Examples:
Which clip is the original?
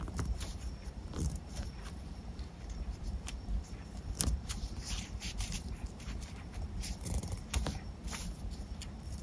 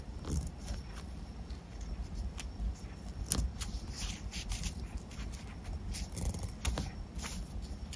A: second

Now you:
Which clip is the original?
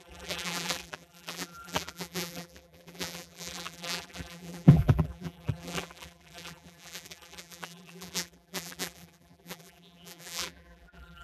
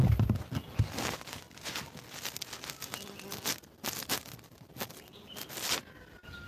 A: second